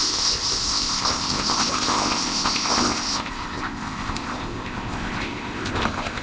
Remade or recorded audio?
remade